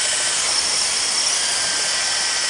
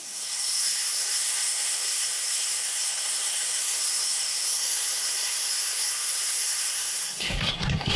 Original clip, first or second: first